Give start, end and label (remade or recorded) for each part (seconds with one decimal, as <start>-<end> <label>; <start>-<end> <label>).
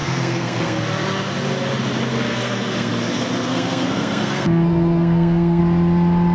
0.0-0.8 remade; 0.8-2.1 recorded; 2.1-2.9 remade; 2.9-3.5 recorded; 3.5-5.6 remade; 5.6-6.3 recorded